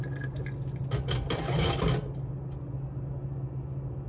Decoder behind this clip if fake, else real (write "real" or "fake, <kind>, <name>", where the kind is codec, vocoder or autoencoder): real